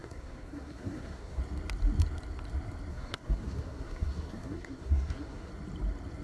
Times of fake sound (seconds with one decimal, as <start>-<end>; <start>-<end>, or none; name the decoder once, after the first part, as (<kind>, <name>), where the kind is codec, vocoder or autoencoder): 0.0-1.4 (codec, SNAC); 2.9-5.5